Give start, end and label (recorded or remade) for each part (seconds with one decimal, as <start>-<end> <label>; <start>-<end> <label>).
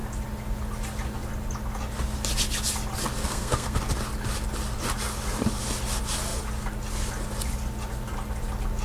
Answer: 0.0-3.2 recorded; 3.2-3.8 remade; 3.8-8.8 recorded